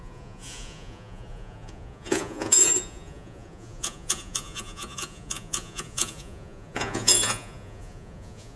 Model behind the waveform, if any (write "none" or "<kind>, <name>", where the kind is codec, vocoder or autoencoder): vocoder, Vocos